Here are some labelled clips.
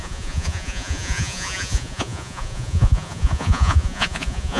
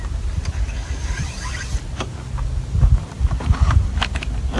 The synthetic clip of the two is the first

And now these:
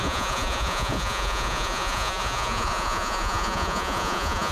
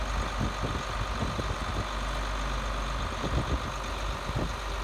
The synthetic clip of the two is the first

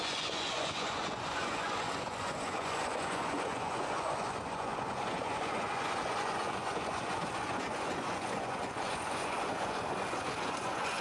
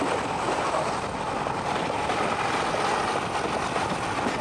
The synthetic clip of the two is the first